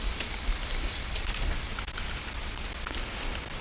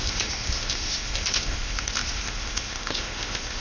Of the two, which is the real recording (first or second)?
first